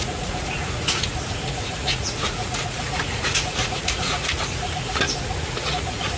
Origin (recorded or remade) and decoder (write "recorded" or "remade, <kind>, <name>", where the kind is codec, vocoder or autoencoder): remade, vocoder, Vocos